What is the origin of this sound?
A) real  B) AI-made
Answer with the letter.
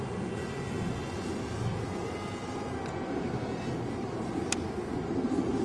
A